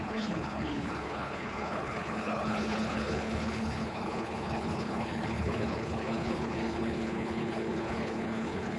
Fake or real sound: fake